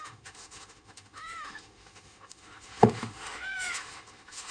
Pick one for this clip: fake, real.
fake